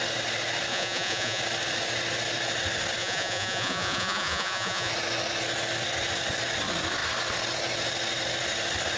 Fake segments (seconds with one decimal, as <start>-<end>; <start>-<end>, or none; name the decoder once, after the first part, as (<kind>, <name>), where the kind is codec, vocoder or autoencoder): 0.7-1.4 (vocoder, Vocos); 3.0-4.9